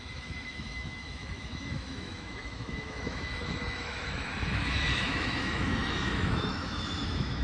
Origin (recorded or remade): remade